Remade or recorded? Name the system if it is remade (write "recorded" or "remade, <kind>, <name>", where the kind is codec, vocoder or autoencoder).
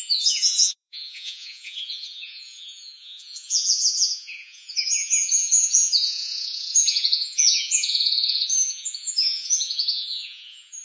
remade, vocoder, Vocos